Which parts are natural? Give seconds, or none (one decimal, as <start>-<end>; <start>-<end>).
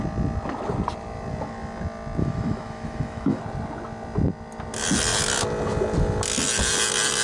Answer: 0.0-2.2; 3.4-7.2